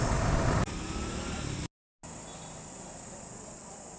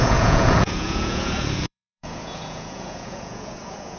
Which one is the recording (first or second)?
first